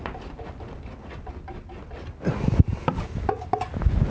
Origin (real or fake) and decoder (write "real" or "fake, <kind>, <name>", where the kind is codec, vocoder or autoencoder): real